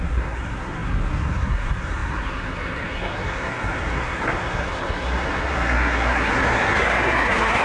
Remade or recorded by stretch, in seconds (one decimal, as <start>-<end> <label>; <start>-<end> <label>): 0.0-7.6 remade